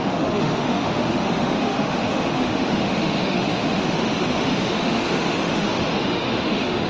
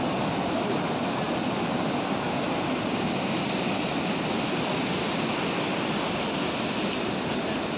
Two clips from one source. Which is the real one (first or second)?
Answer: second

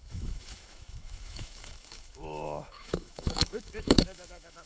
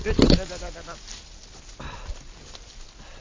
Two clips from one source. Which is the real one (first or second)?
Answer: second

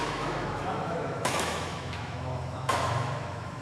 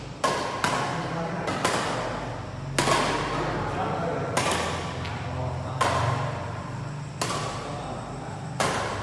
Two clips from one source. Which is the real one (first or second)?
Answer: second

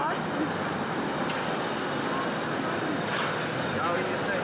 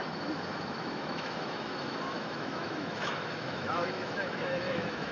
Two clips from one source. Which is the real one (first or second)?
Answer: first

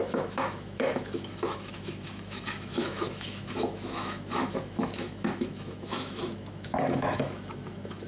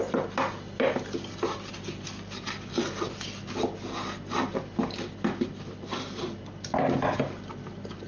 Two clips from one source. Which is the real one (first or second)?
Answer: second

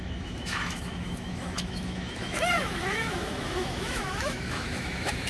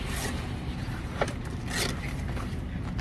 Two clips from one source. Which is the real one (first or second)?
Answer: second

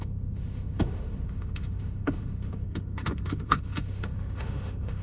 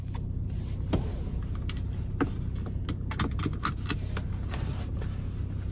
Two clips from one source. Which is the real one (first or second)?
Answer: second